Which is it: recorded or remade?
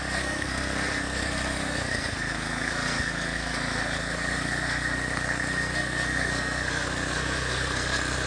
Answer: remade